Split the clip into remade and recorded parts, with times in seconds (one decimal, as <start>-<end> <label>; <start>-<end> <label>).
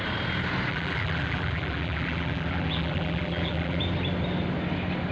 0.0-0.7 recorded; 0.7-3.8 remade; 3.8-5.1 recorded